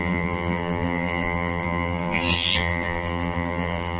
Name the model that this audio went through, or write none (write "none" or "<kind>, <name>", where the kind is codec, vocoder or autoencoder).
vocoder, BigVGAN v2